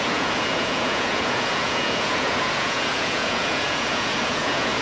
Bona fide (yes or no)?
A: no